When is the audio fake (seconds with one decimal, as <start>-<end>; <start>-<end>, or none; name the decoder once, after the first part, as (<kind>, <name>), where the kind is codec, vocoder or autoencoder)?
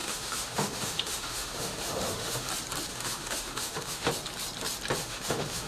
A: 0.0-2.5 (autoencoder, DAC-VAE); 2.9-4.1; 5.0-5.7